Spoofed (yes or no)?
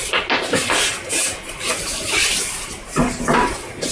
no